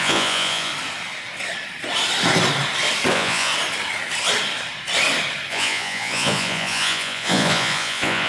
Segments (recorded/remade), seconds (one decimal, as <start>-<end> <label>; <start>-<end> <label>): 0.0-0.7 remade; 0.7-3.1 recorded; 3.1-3.5 remade; 3.5-5.5 recorded; 5.5-8.3 remade

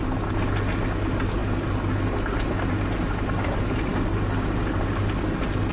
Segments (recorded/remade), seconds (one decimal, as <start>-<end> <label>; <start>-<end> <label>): 0.0-5.7 recorded

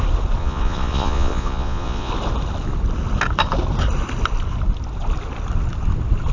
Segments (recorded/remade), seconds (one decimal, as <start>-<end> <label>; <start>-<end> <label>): 0.0-0.4 recorded; 0.4-2.1 remade; 2.1-6.3 recorded